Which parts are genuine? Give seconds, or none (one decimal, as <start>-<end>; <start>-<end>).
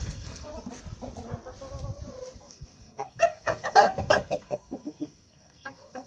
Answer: 0.5-2.4